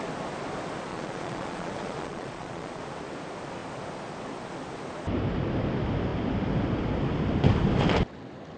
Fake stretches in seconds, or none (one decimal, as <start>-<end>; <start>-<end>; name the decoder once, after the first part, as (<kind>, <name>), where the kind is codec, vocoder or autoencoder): 0.9-2.8 (vocoder, Vocos)

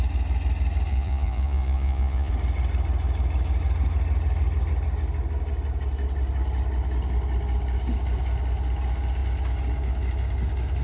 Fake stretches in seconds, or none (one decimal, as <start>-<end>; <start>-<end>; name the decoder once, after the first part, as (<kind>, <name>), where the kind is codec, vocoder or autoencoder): 0.9-2.3 (vocoder, Vocos)

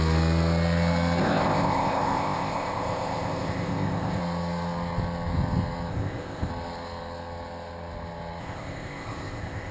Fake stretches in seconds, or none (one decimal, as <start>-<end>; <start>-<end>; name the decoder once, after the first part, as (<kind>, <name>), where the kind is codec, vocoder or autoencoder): 1.2-4.2 (codec, ZipCodec); 5.9-6.5; 8.4-9.7

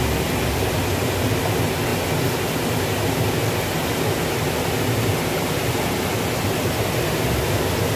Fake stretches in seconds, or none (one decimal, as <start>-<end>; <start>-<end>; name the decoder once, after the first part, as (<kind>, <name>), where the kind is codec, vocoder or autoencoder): none

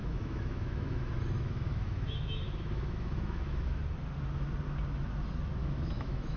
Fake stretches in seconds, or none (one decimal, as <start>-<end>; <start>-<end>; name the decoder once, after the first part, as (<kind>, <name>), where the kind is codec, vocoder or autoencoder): 0.0-3.8 (autoencoder, DAC-VAE); 5.6-6.4